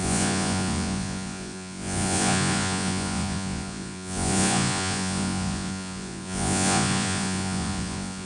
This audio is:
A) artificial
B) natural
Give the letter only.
A